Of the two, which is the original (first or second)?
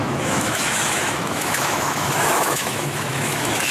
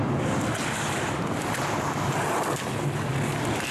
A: second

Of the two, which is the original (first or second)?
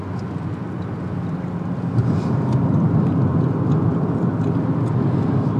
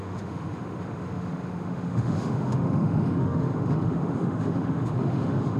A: first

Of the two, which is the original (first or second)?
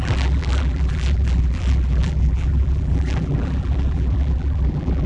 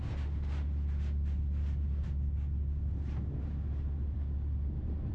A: second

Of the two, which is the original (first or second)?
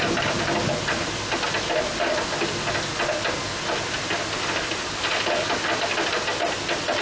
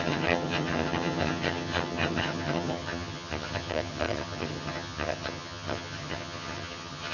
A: first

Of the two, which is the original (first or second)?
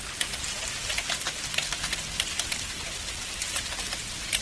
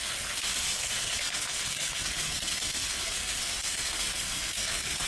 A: first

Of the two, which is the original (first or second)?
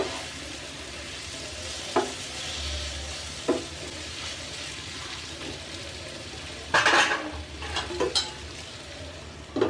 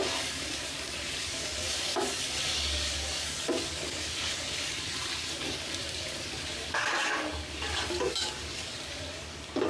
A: first